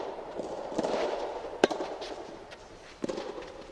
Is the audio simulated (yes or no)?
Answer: yes